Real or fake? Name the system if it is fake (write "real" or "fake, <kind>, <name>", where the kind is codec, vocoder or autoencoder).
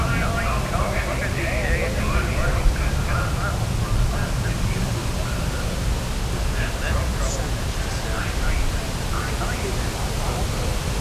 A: real